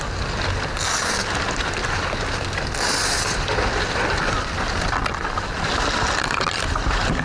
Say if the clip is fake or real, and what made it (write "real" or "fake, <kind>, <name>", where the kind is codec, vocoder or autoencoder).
real